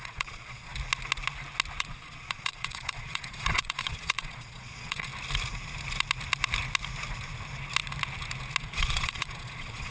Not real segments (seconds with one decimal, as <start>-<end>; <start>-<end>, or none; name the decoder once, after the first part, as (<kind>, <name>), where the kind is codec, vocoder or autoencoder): 0.0-0.7 (vocoder, Vocos); 1.8-5.1; 8.6-9.9